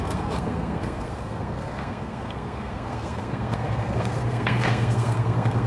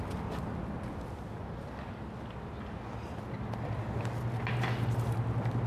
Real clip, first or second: second